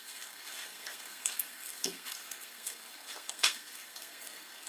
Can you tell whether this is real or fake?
fake